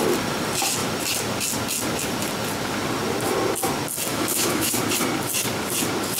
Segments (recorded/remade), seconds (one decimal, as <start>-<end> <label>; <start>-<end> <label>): 0.0-4.1 recorded; 4.1-4.7 remade; 4.7-6.2 recorded